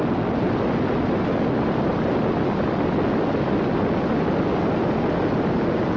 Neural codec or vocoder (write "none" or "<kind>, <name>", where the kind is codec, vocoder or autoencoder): none